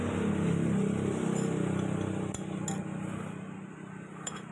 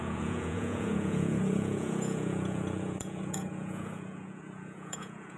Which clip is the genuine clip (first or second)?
first